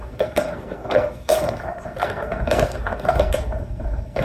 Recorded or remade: remade